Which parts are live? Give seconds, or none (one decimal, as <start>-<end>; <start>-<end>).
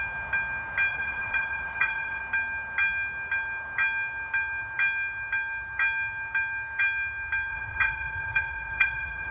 0.0-0.9; 2.2-7.5